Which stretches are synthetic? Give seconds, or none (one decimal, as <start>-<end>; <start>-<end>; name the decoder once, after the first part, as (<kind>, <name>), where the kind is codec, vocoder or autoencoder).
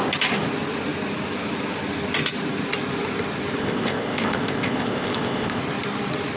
3.6-5.6 (codec, ZipCodec)